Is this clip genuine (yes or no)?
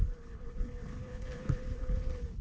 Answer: no